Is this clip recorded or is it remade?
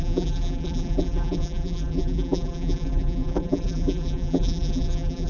remade